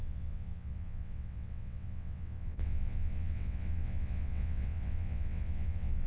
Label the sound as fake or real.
fake